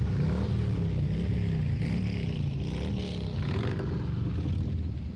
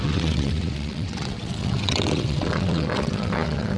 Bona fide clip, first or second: first